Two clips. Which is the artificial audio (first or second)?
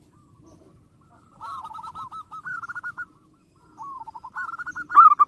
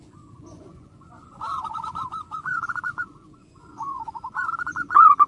second